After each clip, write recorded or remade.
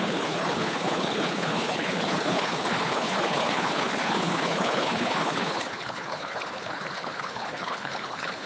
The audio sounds remade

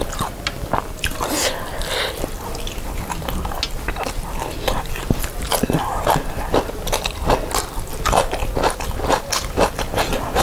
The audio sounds recorded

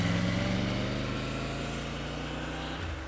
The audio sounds recorded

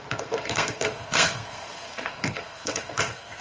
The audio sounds remade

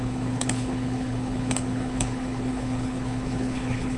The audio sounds remade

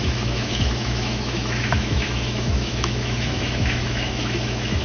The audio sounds remade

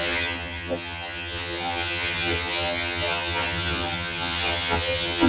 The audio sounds remade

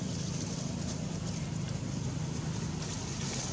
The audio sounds recorded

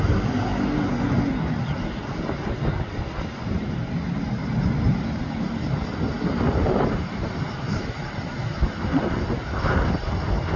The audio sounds recorded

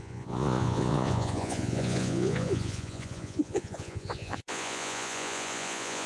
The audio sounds remade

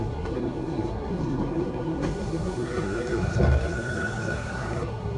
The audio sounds remade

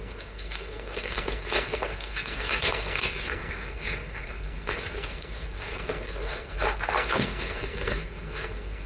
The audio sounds remade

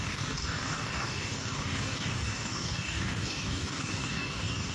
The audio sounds remade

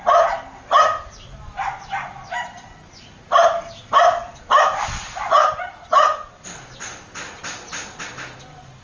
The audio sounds recorded